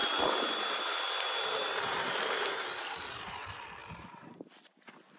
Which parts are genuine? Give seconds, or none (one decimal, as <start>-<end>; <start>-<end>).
0.0-5.2

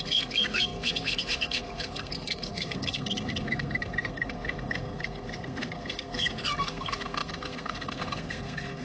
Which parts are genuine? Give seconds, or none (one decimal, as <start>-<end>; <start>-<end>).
none

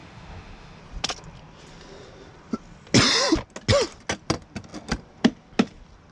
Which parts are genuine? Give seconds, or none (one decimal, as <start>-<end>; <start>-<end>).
0.8-6.1

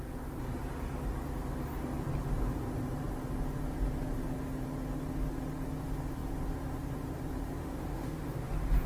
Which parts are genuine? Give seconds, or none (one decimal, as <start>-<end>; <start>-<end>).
0.0-7.6; 8.5-8.9

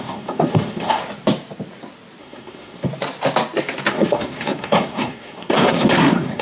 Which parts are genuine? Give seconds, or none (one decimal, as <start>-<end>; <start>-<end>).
1.0-2.2; 2.9-3.9

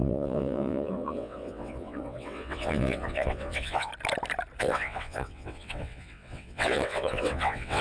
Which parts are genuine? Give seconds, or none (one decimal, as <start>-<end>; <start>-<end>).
3.9-4.6

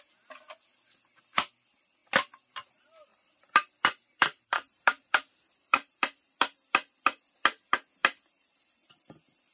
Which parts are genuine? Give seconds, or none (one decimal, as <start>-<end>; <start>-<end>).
0.0-3.1; 6.4-9.5